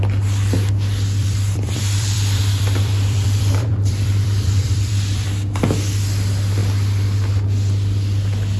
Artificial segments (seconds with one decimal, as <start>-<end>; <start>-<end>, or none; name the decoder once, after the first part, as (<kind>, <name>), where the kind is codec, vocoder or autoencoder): 1.2-5.3 (vocoder, BigVGAN v2)